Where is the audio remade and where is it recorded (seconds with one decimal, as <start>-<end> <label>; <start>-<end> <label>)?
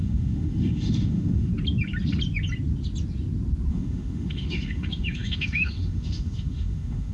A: 0.0-1.5 remade; 1.5-3.7 recorded; 3.7-7.1 remade